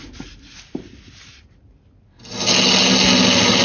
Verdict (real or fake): real